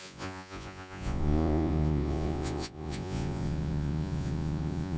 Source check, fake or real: fake